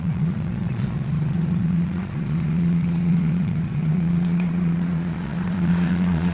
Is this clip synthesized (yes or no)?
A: yes